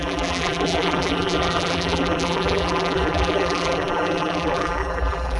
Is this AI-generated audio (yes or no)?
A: yes